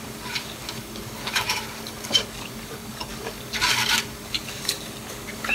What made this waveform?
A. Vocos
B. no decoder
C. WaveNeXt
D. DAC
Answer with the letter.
D